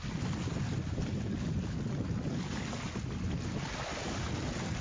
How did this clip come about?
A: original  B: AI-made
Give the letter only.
A